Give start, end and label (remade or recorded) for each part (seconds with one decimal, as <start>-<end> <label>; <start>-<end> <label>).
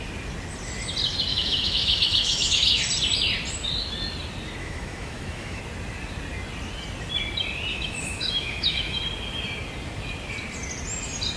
0.0-1.3 recorded; 1.3-2.8 remade; 2.8-4.6 recorded; 4.6-5.6 remade; 5.6-7.7 recorded; 7.7-9.0 remade; 9.0-11.4 recorded